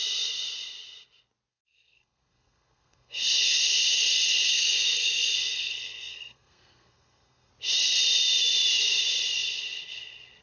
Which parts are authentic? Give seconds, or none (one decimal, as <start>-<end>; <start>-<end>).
0.0-1.5; 3.6-4.5; 7.5-10.4